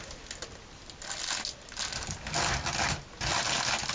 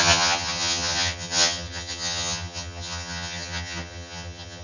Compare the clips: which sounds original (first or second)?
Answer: first